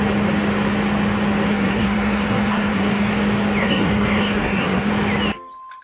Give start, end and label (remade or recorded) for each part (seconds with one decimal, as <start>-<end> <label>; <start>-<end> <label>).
0.0-1.5 recorded; 1.5-3.1 remade; 3.1-3.6 recorded; 3.6-4.9 remade; 4.9-5.8 recorded